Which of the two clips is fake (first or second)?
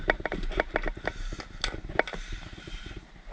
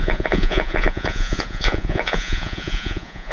second